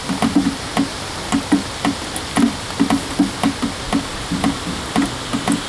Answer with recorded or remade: recorded